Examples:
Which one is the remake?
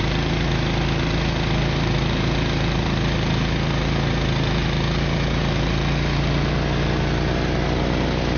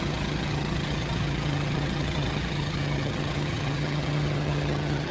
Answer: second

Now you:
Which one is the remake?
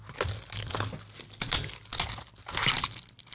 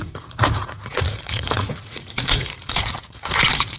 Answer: second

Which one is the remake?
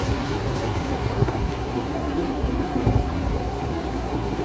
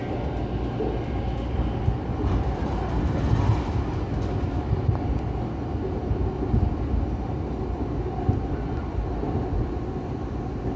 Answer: first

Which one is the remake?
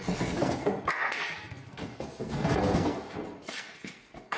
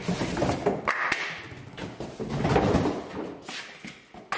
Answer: first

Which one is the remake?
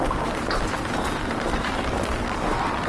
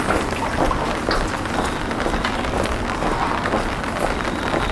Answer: first